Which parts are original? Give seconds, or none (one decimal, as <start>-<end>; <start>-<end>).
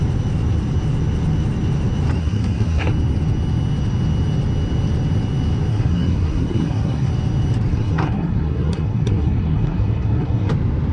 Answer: 0.0-2.2; 2.9-5.7; 7.1-7.7; 10.5-10.9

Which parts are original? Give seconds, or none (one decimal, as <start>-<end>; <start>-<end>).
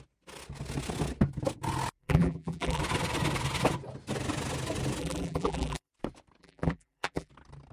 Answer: 0.0-2.0; 2.8-5.0; 5.9-6.4; 7.3-7.7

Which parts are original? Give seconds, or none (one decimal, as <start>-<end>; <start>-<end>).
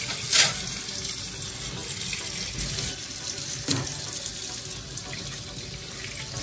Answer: 0.0-6.4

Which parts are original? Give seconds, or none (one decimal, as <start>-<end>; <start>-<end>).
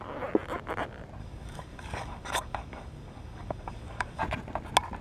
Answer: 0.0-1.2; 4.2-5.0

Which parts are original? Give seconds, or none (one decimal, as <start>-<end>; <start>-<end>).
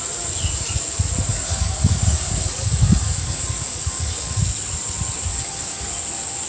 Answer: 0.0-1.3; 4.4-5.3; 5.9-6.5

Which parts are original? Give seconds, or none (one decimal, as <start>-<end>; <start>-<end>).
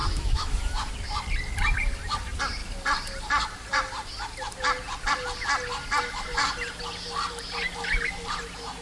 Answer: 0.9-8.8